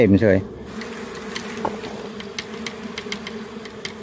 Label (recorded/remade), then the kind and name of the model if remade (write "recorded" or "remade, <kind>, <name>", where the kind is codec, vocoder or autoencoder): recorded